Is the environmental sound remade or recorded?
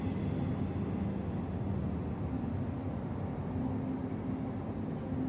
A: recorded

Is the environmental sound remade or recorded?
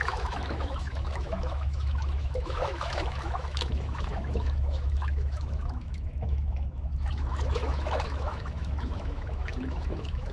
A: remade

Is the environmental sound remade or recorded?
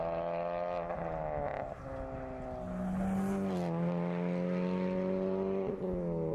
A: recorded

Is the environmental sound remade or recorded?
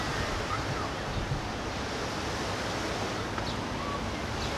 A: recorded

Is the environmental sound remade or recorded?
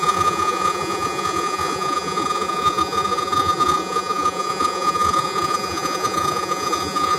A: remade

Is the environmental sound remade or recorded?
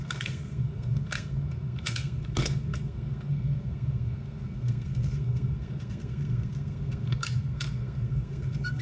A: remade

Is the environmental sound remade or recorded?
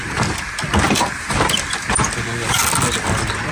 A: recorded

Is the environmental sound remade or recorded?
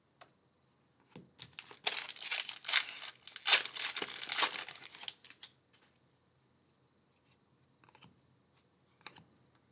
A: recorded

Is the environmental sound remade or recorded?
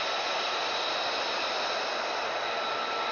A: recorded